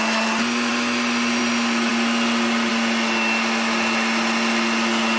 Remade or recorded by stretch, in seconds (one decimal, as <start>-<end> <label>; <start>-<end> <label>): 0.0-5.2 recorded